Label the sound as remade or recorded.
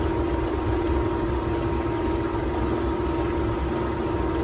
recorded